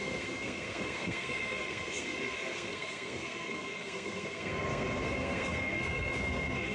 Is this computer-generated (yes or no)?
yes